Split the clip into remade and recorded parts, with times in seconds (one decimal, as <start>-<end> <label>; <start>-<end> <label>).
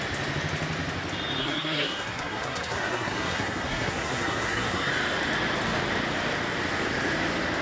0.0-1.4 recorded; 1.4-4.9 remade; 4.9-7.6 recorded